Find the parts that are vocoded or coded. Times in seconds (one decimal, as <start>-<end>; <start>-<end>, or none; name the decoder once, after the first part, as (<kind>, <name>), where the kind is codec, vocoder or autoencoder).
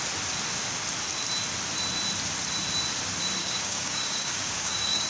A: 3.4-5.1 (codec, DAC)